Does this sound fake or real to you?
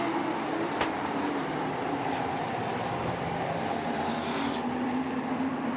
fake